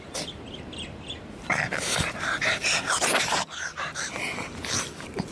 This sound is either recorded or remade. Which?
recorded